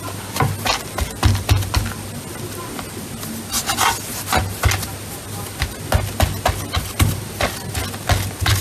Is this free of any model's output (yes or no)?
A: yes